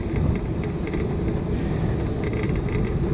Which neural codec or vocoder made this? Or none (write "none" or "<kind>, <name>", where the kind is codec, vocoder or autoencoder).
none